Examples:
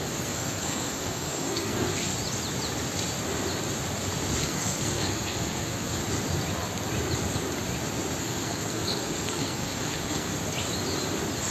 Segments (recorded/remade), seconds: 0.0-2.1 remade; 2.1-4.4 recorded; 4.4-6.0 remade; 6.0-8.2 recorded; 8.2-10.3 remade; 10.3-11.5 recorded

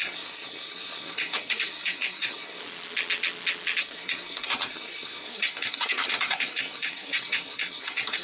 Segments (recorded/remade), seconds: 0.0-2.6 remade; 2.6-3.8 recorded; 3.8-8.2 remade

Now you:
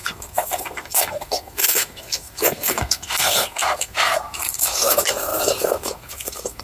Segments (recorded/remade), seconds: 0.0-6.6 remade

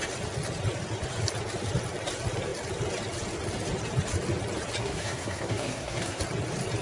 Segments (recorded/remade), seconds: 0.0-4.8 recorded; 4.8-6.2 remade; 6.2-6.8 recorded

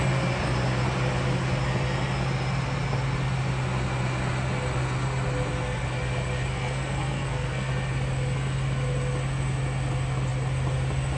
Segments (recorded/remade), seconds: 0.0-6.5 recorded; 6.5-7.7 remade; 7.7-11.2 recorded

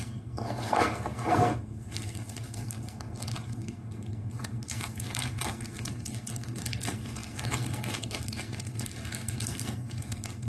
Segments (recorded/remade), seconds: 0.0-10.5 remade

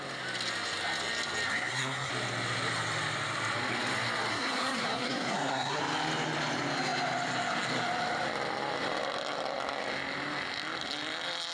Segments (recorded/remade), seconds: 0.0-1.5 recorded; 1.5-2.1 remade; 2.1-4.3 recorded; 4.3-5.8 remade; 5.8-11.5 recorded

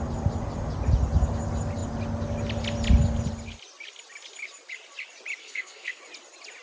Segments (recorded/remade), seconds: 0.0-5.4 recorded; 5.4-6.0 remade; 6.0-6.6 recorded